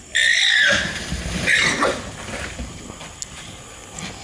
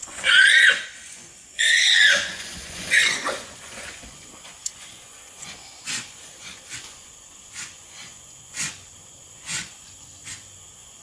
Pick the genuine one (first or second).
first